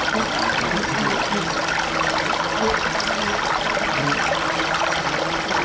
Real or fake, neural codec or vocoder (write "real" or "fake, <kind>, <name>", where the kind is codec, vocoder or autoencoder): real